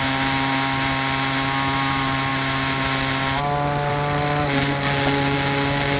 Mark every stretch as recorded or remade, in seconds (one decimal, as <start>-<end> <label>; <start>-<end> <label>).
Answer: 0.0-6.0 recorded